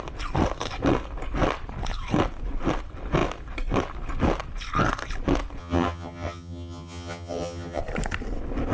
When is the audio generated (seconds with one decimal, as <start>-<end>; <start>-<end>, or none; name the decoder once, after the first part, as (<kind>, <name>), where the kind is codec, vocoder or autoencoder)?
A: 5.6-7.8 (vocoder, HiFi-GAN)